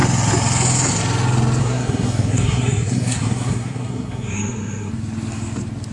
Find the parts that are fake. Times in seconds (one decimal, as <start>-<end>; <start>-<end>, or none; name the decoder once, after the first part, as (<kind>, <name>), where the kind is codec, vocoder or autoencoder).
1.6-4.9 (codec, SNAC)